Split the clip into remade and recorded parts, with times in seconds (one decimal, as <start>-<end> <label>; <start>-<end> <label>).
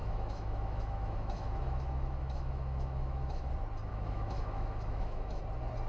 0.0-3.5 remade; 3.5-3.9 recorded; 3.9-5.4 remade; 5.4-5.9 recorded